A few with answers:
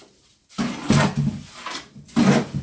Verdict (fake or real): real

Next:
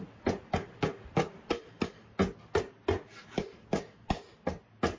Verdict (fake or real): real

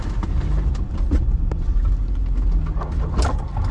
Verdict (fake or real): real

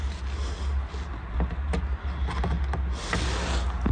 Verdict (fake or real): real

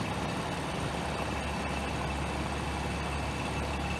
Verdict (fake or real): real